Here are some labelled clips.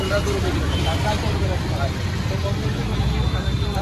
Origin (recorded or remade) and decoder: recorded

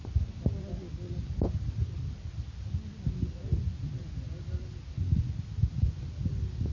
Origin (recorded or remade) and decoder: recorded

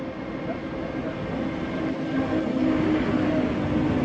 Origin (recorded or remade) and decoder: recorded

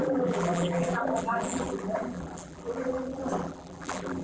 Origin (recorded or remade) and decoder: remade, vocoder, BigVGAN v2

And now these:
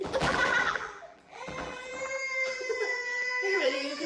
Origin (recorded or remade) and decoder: remade, vocoder, BigVGAN v2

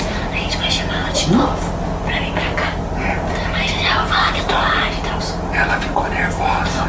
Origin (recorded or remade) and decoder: recorded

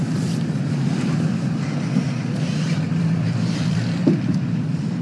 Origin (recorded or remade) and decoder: remade, vocoder, BigVGAN v2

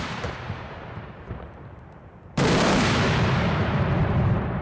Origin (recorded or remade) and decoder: remade, vocoder, BigVGAN v2